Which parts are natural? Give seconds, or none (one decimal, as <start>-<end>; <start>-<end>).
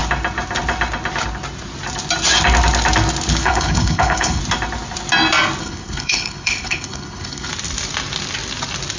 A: 0.0-3.4; 4.4-5.6; 7.5-9.0